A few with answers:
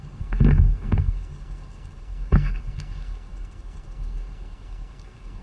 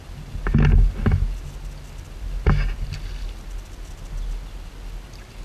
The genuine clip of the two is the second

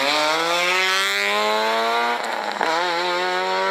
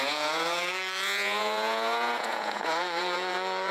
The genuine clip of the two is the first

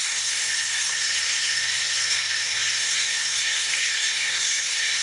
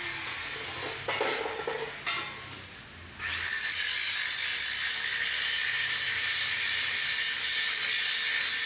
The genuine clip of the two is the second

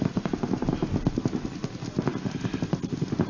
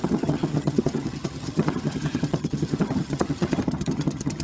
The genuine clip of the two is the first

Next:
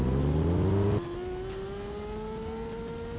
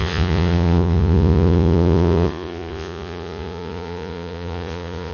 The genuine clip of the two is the first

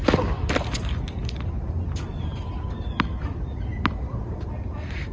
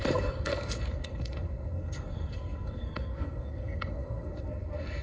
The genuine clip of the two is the first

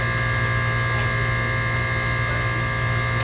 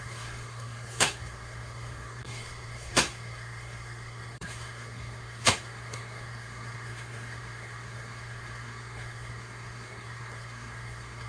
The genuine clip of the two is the first